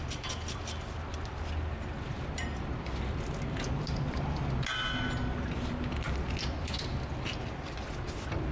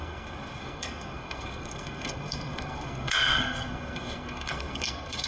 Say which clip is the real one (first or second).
first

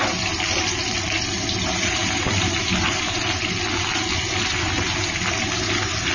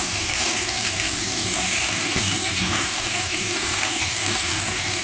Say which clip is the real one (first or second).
first